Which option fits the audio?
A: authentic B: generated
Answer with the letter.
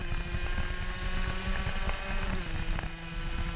A